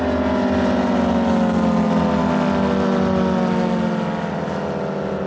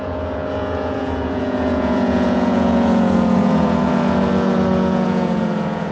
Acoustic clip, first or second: first